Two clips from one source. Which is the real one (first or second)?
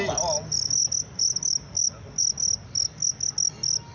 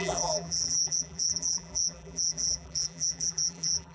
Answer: first